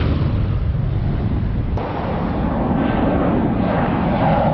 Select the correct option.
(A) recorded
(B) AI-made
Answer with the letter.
A